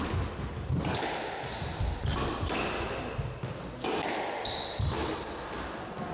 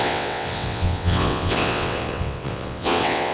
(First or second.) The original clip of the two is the first